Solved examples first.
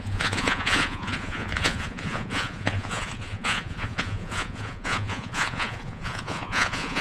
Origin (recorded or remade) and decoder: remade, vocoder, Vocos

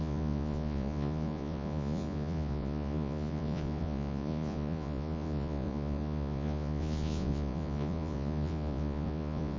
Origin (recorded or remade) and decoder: remade, vocoder, Vocos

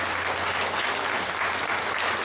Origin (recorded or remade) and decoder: recorded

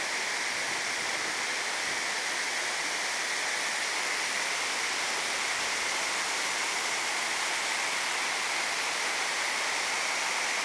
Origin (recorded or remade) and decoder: recorded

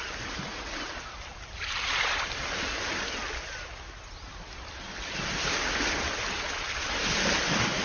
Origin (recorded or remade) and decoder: recorded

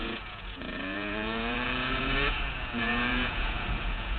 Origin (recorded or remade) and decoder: remade, vocoder, Vocos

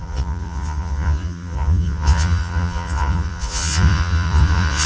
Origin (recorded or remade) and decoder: remade, vocoder, Vocos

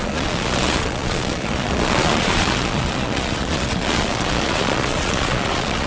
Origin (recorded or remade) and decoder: remade, vocoder, Vocos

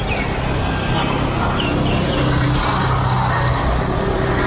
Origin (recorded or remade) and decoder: recorded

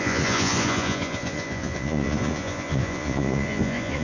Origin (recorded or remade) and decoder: remade, vocoder, Vocos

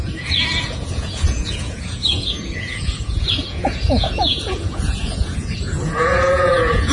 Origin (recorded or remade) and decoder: remade, vocoder, Vocos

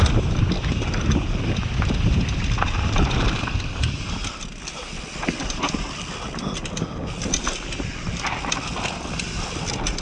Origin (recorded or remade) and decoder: recorded